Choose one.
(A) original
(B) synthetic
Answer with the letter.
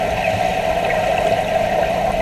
A